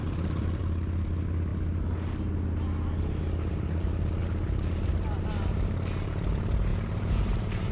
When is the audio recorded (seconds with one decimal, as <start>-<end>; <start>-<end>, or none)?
0.6-6.7